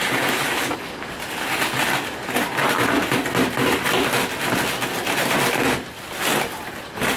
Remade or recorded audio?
recorded